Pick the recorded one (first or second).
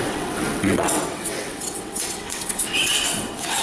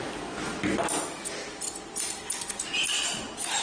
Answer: second